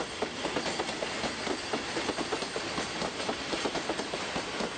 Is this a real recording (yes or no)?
yes